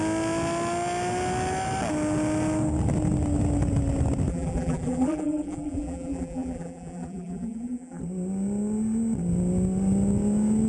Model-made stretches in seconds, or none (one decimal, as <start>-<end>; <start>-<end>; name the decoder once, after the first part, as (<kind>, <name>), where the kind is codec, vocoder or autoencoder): 4.3-8.0 (vocoder, BigVGAN v2)